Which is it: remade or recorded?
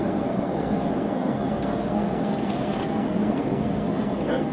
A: remade